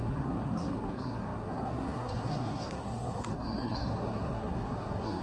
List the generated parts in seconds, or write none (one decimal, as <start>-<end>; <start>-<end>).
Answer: 0.0-5.2